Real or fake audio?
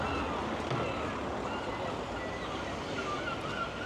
real